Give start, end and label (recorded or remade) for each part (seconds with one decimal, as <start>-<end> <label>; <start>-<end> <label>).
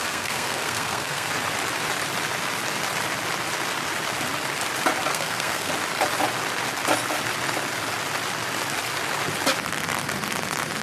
0.0-1.3 remade; 1.3-5.1 recorded; 5.1-5.7 remade; 5.7-10.8 recorded